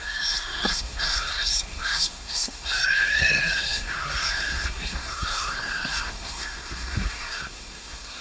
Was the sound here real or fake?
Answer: fake